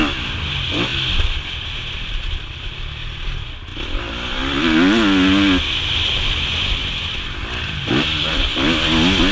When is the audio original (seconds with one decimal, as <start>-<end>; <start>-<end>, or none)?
0.0-9.3